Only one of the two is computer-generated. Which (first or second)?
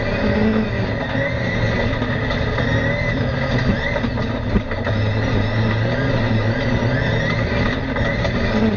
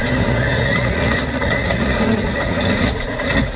second